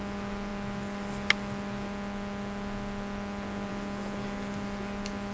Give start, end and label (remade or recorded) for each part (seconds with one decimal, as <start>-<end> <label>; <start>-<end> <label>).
0.0-5.3 recorded